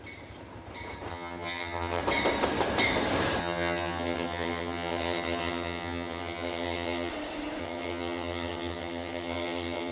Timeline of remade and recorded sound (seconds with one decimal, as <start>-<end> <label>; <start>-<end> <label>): 0.0-1.1 recorded; 1.1-2.0 remade; 2.0-3.4 recorded; 3.4-7.1 remade; 7.1-7.6 recorded; 7.6-9.9 remade